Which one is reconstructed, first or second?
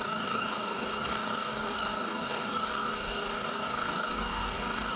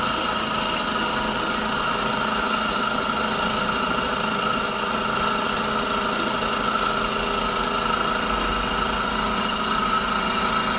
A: first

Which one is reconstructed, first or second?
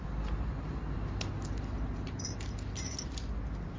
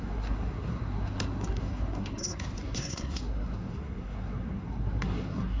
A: second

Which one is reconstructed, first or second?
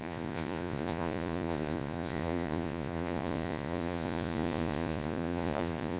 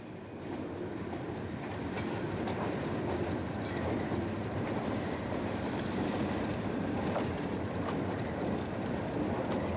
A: first